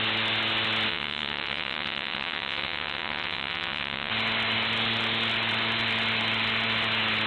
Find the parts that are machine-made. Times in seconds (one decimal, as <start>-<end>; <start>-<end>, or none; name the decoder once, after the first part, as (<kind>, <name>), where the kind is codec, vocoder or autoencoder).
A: 0.9-4.1 (vocoder, WaveNeXt)